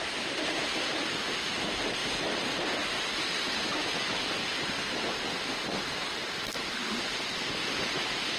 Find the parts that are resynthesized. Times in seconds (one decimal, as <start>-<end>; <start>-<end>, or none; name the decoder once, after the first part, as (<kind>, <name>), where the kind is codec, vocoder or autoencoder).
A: none